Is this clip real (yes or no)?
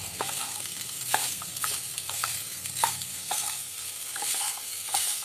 no